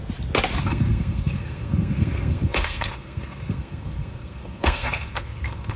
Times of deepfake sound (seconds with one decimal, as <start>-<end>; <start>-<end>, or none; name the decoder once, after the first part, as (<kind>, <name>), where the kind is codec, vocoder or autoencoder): 0.6-5.8 (codec, SNAC)